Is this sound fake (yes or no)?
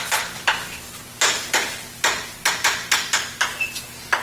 no